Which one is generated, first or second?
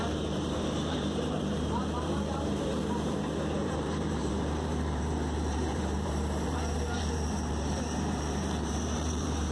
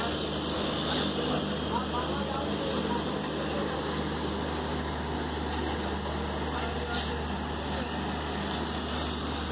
first